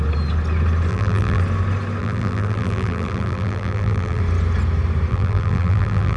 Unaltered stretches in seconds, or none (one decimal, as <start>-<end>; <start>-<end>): 0.0-0.9; 1.4-2.0; 4.2-5.1